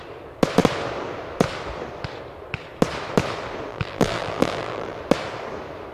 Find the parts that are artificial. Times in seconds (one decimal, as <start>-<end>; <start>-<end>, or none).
3.7-5.0